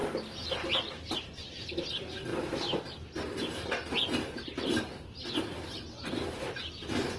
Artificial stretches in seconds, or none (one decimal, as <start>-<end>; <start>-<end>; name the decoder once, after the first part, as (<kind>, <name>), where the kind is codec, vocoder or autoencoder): 0.0-2.3 (vocoder, BigVGAN v2); 3.4-7.2

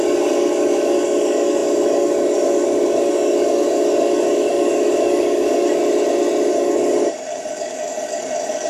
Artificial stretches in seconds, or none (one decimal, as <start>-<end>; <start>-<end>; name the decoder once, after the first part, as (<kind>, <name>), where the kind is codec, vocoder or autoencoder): 0.0-5.8 (codec, DAC); 6.5-8.7

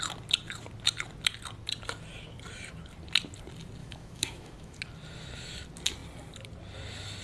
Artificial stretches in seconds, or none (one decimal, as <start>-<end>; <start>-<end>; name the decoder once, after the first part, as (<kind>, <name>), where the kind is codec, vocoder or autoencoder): 3.8-4.8 (autoencoder, DAC-VAE)